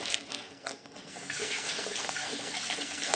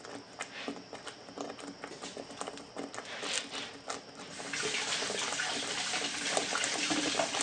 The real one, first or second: second